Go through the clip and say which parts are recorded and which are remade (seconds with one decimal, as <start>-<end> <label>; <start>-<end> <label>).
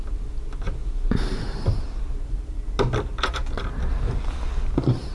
0.0-5.1 recorded